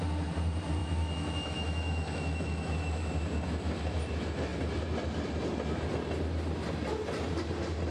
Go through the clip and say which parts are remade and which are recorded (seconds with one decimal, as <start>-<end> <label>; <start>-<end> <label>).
0.0-0.8 recorded; 0.8-3.1 remade; 3.1-7.9 recorded

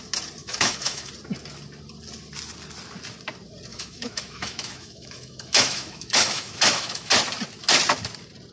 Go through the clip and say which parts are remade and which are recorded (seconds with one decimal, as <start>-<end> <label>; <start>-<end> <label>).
0.0-0.4 recorded; 0.4-1.1 remade; 1.1-3.7 recorded; 3.7-7.1 remade; 7.1-8.5 recorded